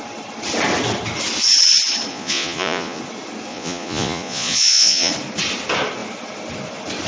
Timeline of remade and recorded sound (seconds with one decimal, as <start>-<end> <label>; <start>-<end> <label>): 0.0-2.1 recorded; 2.1-3.0 remade; 3.0-3.5 recorded; 3.5-5.1 remade; 5.1-7.1 recorded